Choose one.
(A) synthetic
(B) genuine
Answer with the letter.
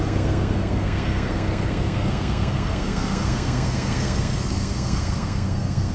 A